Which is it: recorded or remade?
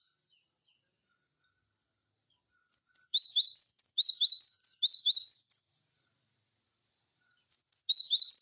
recorded